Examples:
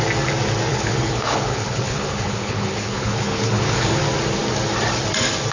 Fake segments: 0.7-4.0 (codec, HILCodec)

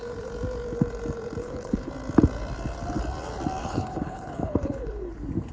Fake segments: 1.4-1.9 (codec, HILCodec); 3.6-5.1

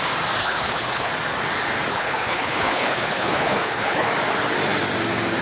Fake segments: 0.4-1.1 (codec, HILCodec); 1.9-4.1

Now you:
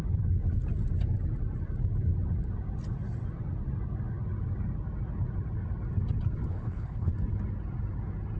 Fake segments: 6.5-7.1 (codec, HILCodec)

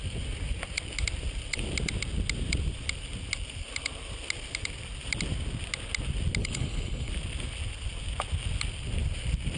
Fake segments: 6.4-7.1 (codec, HILCodec)

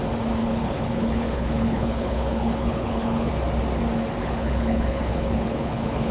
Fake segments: 0.4-3.3 (codec, HILCodec); 4.2-6.1

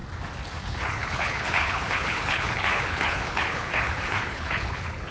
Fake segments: 0.6-5.1 (codec, HILCodec)